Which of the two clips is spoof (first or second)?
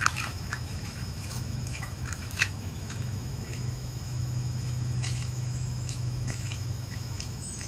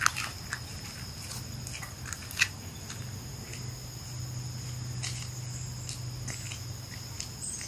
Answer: first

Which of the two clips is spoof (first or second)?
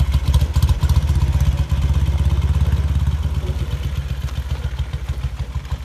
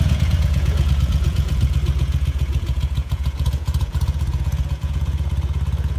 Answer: second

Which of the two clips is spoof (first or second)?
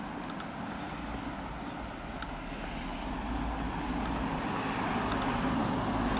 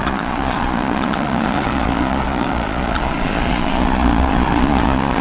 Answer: second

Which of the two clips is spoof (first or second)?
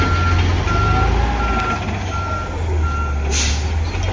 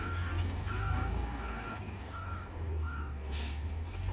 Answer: second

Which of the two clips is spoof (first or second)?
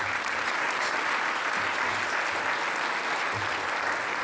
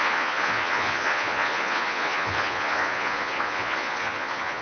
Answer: second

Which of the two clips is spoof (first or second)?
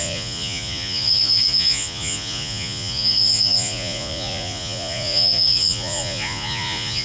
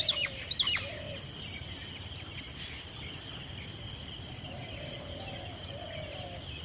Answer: first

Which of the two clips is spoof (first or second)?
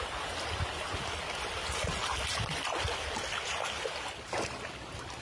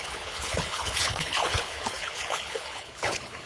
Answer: second